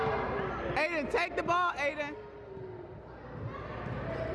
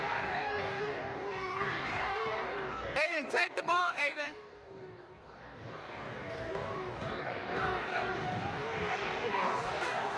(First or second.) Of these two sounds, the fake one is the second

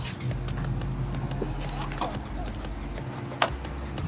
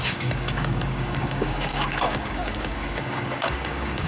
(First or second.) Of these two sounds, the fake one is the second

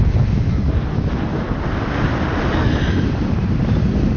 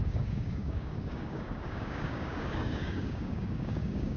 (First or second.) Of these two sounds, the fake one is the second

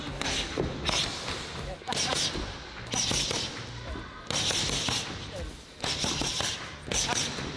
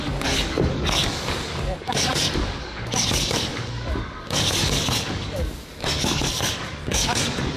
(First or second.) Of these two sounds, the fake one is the second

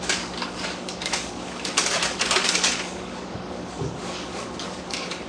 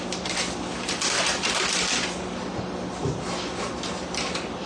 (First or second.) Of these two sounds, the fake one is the first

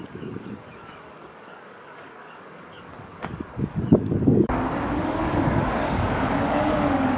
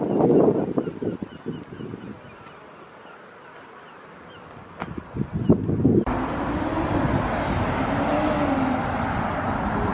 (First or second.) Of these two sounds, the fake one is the first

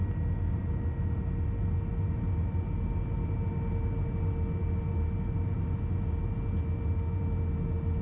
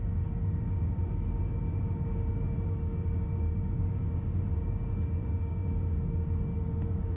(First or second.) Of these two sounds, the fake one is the second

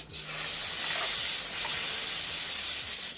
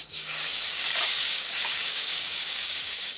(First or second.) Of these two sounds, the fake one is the second